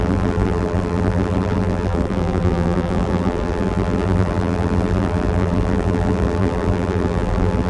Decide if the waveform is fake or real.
fake